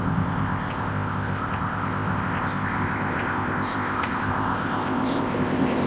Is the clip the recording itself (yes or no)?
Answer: no